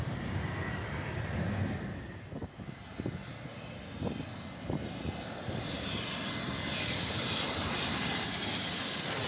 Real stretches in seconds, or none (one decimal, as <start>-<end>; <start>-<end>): 0.0-9.3